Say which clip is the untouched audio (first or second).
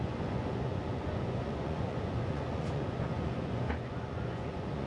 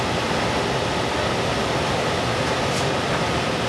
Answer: second